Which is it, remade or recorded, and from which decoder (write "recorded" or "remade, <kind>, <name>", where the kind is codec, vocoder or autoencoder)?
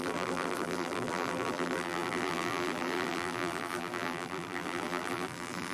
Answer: remade, vocoder, BigVGAN v2